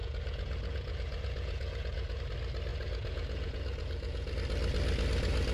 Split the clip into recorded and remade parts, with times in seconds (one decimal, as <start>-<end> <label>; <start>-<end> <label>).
0.0-2.2 remade; 2.2-2.7 recorded; 2.7-4.3 remade; 4.3-5.5 recorded